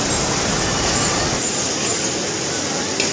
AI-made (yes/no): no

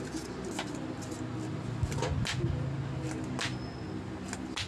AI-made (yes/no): no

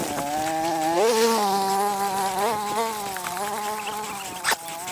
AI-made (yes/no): no